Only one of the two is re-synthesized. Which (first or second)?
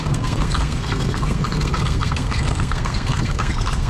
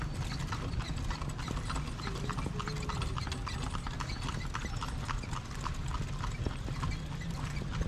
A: first